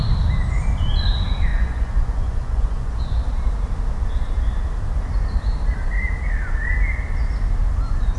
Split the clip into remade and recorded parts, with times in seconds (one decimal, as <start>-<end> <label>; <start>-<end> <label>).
0.0-1.5 recorded; 1.5-3.0 remade; 3.0-8.2 recorded